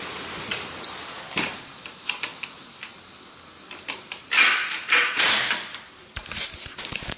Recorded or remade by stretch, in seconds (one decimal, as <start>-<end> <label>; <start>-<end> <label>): 0.0-2.3 remade; 2.3-4.0 recorded; 4.0-7.2 remade